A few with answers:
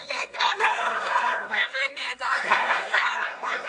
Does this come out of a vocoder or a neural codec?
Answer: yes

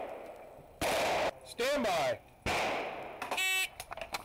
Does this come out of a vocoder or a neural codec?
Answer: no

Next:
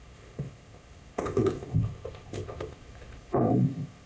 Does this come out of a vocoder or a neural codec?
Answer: yes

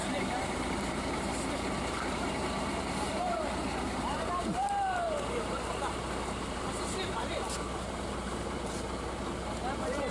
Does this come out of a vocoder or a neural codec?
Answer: yes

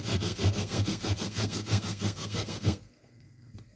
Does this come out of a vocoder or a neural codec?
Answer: yes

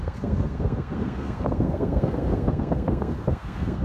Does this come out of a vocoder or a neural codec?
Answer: yes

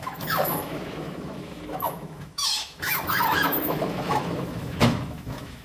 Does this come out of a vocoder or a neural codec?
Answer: yes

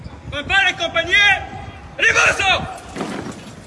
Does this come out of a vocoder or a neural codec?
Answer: no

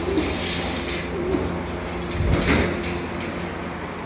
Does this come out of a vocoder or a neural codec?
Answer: no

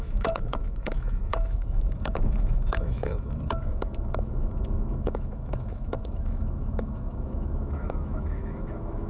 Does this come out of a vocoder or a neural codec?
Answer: yes